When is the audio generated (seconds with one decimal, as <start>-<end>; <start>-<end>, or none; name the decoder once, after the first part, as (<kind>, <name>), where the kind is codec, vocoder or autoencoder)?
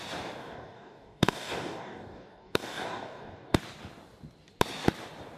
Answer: 0.4-3.6 (codec, DAC)